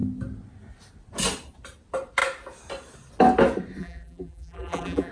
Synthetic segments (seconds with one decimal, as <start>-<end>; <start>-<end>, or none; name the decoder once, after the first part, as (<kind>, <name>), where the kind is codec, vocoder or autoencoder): 3.8-5.1 (vocoder, BigVGAN v2)